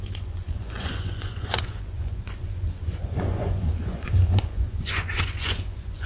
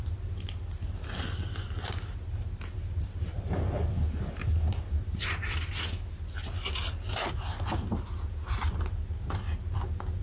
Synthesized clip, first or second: first